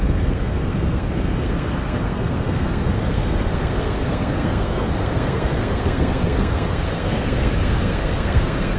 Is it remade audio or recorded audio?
remade